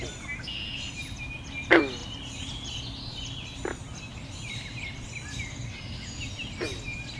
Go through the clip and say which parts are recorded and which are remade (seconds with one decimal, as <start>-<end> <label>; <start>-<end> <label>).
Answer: 0.0-7.2 recorded